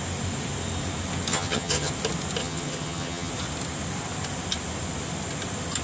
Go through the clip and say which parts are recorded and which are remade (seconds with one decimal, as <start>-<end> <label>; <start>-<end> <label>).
0.0-1.3 recorded; 1.3-1.9 remade; 1.9-2.4 recorded; 2.4-3.3 remade; 3.3-5.8 recorded